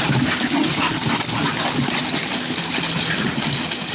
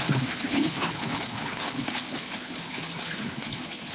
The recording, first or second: first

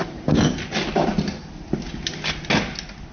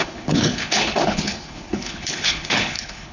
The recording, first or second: first